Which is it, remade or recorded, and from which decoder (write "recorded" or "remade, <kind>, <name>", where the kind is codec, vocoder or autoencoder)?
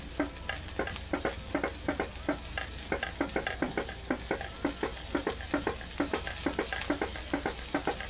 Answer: recorded